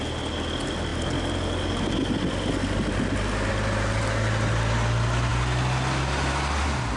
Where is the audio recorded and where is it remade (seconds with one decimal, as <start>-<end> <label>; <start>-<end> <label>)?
0.0-7.0 recorded